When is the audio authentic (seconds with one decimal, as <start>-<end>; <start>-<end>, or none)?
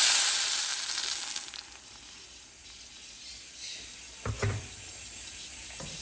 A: 0.7-4.3